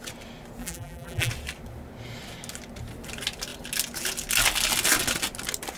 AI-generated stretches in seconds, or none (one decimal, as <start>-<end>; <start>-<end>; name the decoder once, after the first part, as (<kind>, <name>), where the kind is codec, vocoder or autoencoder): 0.6-1.3 (vocoder, BigVGAN v2)